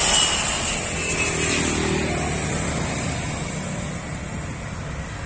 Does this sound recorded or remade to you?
recorded